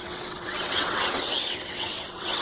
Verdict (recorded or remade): remade